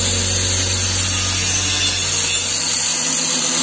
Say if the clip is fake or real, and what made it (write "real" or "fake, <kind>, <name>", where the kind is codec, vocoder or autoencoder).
real